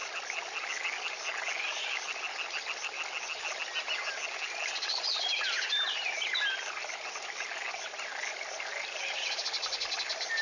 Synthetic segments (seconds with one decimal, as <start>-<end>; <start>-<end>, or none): none